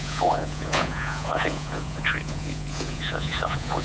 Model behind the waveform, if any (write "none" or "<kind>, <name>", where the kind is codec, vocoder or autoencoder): vocoder, Vocos